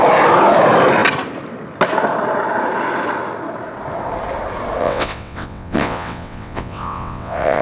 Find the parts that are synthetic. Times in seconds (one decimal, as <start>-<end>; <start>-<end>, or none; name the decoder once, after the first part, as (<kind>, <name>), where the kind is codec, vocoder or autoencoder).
4.8-7.6 (vocoder, WaveNeXt)